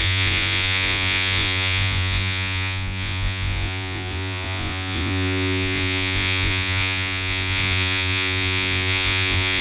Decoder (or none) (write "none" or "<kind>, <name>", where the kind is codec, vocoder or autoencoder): vocoder, Vocos